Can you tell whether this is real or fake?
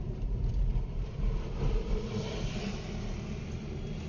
real